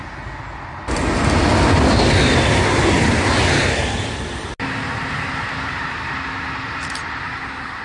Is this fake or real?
real